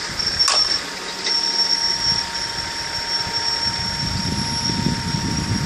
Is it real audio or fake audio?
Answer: real